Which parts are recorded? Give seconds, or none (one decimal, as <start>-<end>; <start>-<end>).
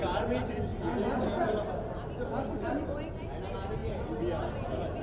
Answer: 0.0-5.0